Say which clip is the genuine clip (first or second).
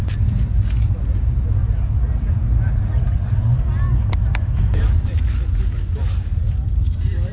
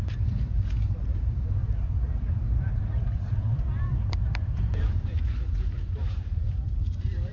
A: first